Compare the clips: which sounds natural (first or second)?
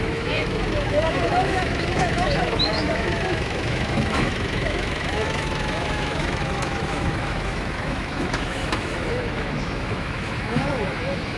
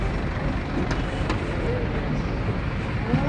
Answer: second